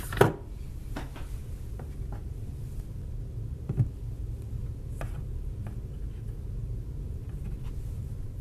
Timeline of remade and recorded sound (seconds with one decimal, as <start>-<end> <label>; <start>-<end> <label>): 0.0-8.4 recorded